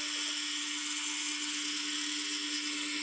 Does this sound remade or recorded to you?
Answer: recorded